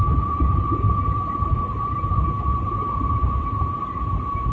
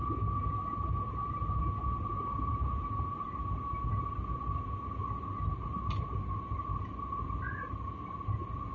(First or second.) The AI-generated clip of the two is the first